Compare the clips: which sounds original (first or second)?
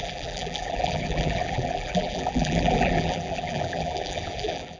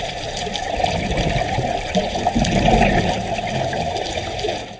second